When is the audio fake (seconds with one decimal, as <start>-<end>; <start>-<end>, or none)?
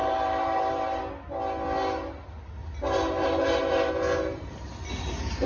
0.0-1.0; 2.6-3.9